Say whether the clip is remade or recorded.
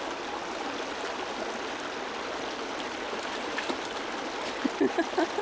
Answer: recorded